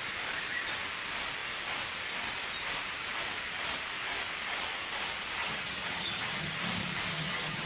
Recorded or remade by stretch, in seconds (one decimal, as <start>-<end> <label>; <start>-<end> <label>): 0.0-5.4 recorded; 5.4-6.6 remade; 6.6-7.1 recorded; 7.1-7.7 remade